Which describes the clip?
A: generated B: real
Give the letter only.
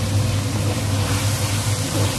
B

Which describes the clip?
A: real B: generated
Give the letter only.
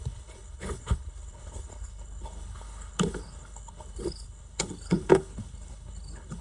B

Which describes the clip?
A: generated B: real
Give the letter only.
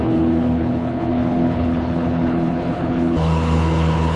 A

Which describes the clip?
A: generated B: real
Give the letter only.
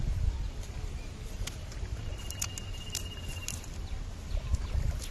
B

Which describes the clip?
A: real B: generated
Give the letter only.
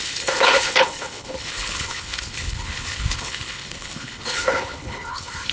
B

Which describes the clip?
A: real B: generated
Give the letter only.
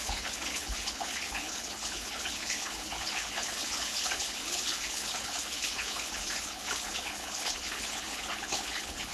B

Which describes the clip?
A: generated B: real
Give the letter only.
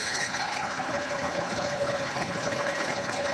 A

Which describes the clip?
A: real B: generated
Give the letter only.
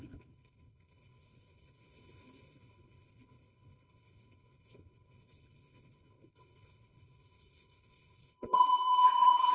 B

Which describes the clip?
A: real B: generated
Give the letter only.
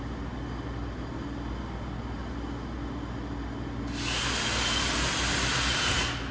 A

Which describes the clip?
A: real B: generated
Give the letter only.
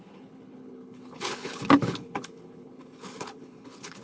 B